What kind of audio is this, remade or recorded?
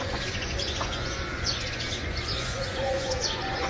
remade